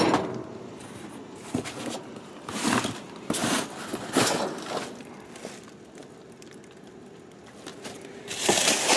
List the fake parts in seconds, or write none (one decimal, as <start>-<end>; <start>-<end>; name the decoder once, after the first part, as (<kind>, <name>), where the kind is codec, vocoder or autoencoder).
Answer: 1.2-2.6 (vocoder, BigVGAN v2); 7.7-9.0